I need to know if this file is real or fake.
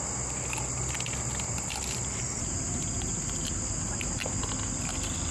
real